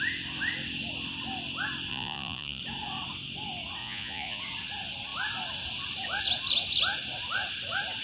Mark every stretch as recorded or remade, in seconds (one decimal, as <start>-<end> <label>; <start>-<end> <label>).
0.0-1.9 recorded; 1.9-2.6 remade; 2.6-3.8 recorded; 3.8-4.4 remade; 4.4-8.0 recorded